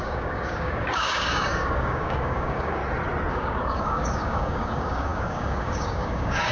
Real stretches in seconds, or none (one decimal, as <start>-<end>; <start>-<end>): 2.8-3.3